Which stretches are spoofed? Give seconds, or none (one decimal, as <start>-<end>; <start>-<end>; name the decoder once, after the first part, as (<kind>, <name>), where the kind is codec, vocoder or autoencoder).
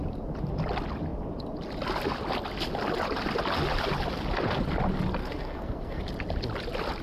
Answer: 5.2-6.0 (codec, SNAC)